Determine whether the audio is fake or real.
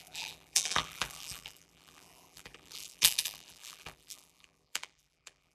fake